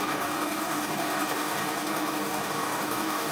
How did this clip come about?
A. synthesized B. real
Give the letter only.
A